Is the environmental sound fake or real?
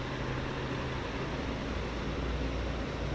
real